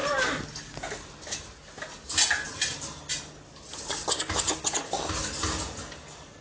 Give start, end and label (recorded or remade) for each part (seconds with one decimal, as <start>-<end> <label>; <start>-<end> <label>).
0.0-6.4 recorded